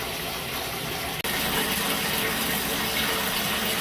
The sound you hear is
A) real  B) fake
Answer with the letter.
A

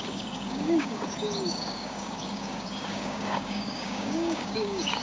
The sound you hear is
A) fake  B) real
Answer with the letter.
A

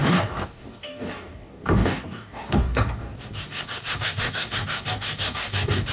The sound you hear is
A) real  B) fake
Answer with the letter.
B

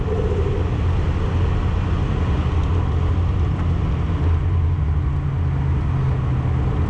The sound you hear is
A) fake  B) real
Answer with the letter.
B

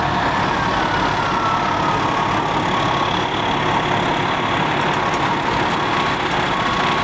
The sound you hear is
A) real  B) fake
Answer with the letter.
A